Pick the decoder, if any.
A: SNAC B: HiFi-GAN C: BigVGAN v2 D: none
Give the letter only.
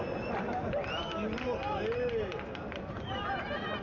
D